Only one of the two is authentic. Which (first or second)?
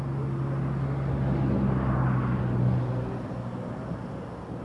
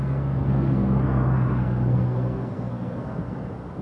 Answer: first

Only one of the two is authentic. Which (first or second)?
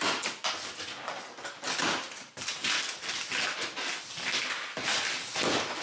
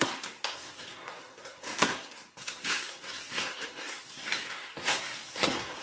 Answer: first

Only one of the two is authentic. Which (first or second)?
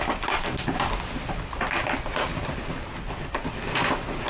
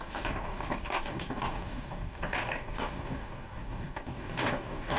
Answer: first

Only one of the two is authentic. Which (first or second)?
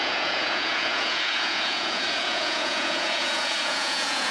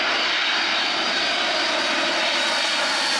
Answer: second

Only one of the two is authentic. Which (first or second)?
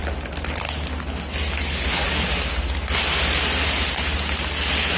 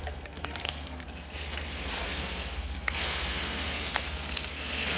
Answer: first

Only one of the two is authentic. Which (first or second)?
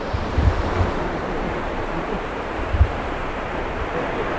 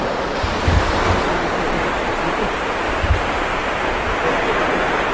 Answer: second